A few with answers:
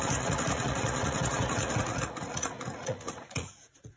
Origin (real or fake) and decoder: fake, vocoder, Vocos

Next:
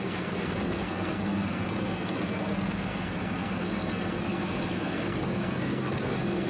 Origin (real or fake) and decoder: fake, codec, SNAC